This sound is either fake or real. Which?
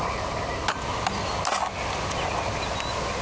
real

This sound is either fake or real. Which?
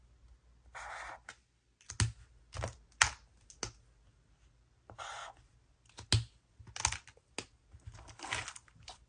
real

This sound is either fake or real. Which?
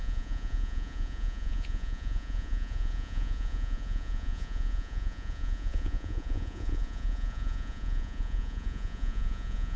fake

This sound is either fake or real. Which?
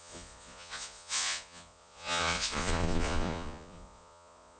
fake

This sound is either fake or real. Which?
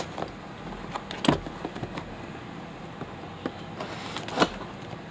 real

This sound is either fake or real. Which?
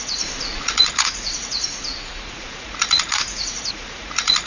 fake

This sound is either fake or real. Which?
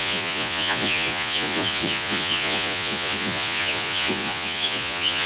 fake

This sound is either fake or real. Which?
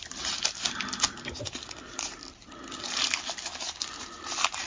real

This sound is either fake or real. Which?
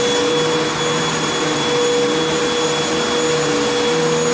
real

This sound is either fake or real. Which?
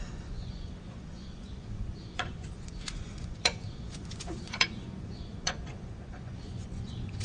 fake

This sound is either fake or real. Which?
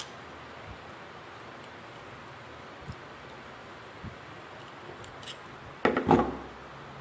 real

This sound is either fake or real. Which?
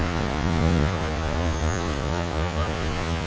fake